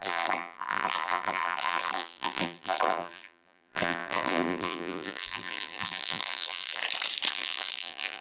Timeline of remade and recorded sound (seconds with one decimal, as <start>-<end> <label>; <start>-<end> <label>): 0.0-6.8 remade; 6.8-7.3 recorded; 7.3-8.2 remade